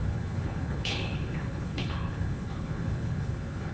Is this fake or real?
fake